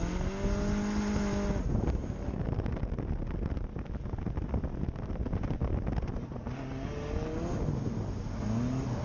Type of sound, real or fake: real